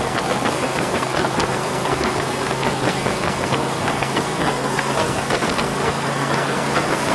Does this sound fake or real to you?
fake